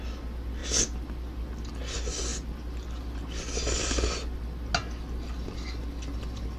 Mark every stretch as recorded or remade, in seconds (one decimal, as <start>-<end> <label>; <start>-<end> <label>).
0.0-6.6 recorded